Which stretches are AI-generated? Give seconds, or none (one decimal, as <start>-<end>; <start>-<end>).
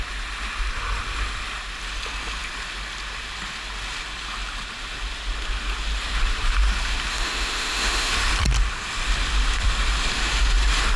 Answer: 7.1-8.1